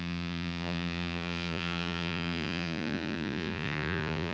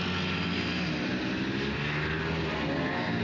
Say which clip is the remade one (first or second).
first